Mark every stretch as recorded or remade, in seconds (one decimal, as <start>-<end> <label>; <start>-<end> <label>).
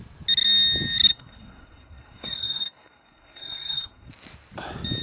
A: 0.0-1.1 recorded; 1.1-4.1 remade; 4.1-5.0 recorded